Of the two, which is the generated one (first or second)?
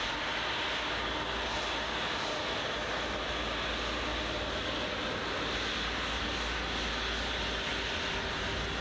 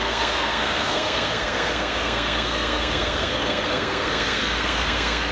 second